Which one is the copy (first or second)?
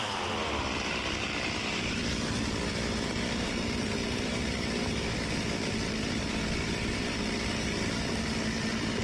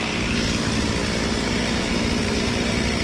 first